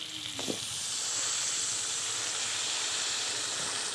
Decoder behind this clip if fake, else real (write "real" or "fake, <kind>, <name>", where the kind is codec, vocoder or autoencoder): real